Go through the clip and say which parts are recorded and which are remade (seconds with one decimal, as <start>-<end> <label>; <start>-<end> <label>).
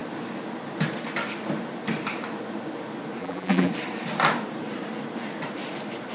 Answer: 0.0-3.2 recorded; 3.2-3.7 remade; 3.7-6.1 recorded